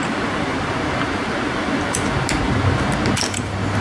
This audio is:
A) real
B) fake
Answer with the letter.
A